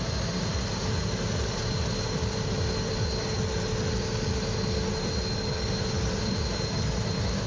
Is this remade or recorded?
recorded